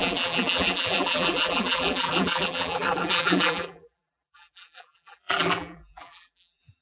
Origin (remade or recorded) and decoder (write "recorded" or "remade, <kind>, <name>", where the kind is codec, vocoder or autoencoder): remade, vocoder, BigVGAN v2